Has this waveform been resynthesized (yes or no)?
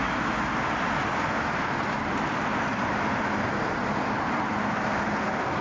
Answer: no